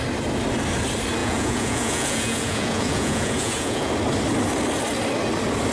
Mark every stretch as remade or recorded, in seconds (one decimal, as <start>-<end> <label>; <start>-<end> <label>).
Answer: 0.0-1.2 recorded; 1.2-3.9 remade; 3.9-5.7 recorded